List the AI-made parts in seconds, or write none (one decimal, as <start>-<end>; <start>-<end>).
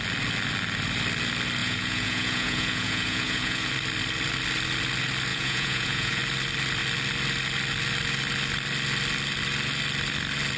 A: 1.6-3.7; 5.3-6.2